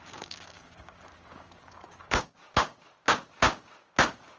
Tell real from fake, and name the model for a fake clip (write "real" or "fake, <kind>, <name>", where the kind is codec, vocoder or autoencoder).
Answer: fake, codec, DAC